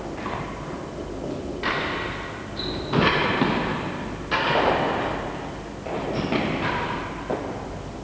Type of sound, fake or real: real